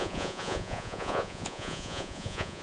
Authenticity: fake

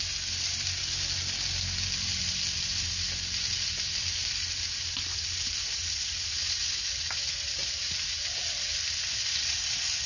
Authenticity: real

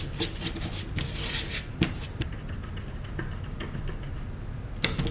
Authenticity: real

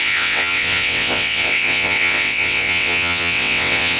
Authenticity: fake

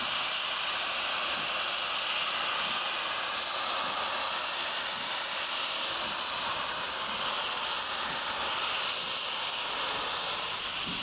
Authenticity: real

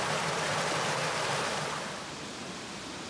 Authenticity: real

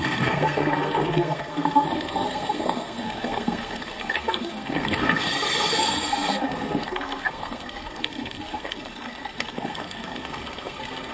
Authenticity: fake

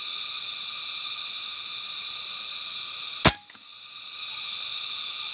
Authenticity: real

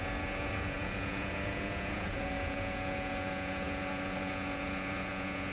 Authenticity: fake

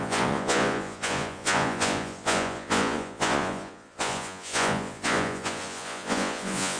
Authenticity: fake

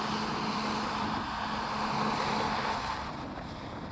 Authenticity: real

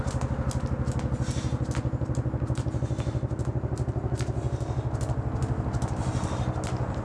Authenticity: real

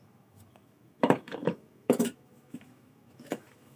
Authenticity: fake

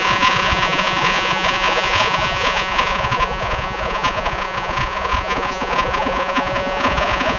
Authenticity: fake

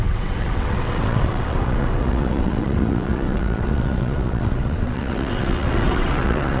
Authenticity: fake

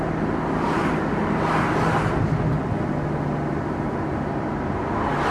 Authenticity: real